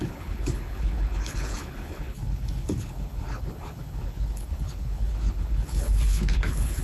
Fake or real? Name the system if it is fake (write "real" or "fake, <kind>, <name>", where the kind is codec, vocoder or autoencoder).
fake, codec, HILCodec